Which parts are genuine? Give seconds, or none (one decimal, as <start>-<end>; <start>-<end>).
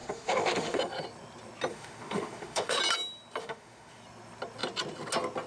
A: 0.8-1.7; 2.8-3.4; 4.0-5.5